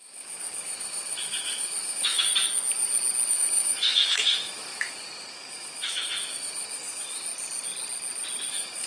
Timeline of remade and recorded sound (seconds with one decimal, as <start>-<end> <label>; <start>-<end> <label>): 0.0-2.3 remade; 2.3-3.3 recorded; 3.3-7.3 remade; 7.3-8.5 recorded; 8.5-8.9 remade